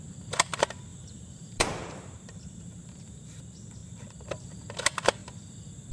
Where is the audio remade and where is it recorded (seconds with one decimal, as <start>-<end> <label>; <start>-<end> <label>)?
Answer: 0.0-0.9 recorded; 0.9-3.4 remade; 3.4-3.8 recorded; 3.8-4.6 remade; 4.6-5.2 recorded; 5.2-5.9 remade